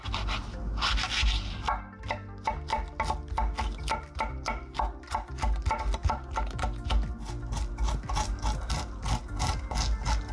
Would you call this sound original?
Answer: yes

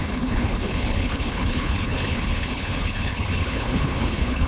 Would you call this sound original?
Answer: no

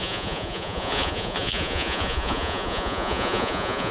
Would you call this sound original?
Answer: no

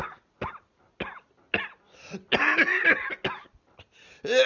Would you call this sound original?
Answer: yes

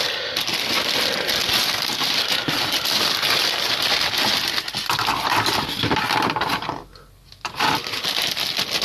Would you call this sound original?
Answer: yes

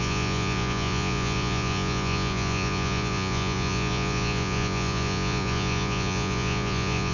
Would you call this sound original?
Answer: no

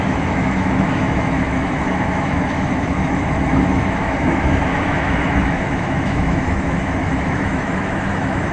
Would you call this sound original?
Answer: no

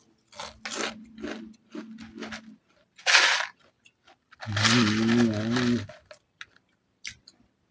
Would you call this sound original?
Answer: yes